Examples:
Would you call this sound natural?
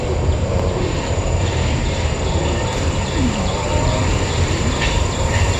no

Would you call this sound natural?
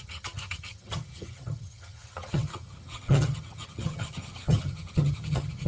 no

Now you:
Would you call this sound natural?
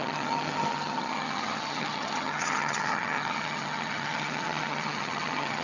no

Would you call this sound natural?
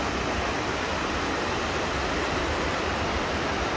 yes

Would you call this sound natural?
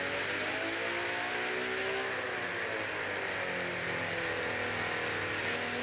yes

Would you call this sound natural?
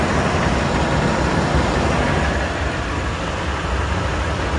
yes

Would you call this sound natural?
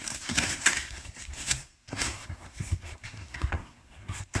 no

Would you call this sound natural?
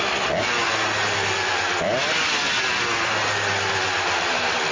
yes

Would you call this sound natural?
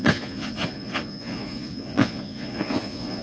no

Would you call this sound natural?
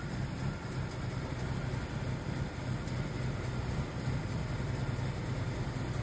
yes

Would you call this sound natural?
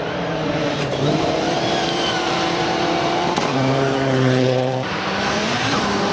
no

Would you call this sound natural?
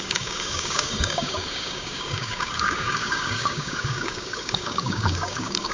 no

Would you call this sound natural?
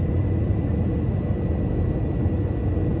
yes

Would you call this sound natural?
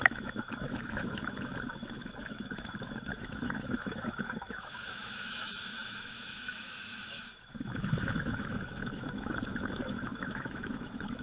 no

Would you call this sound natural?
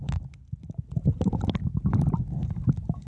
yes